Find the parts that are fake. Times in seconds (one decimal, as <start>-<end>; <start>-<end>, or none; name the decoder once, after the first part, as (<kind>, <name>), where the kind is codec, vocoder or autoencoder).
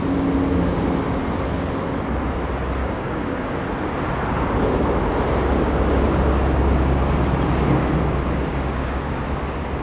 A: 2.8-3.5 (codec, DAC); 8.5-9.1